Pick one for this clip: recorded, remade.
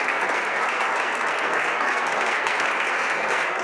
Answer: remade